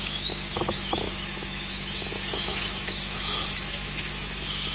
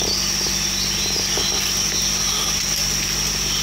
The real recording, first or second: second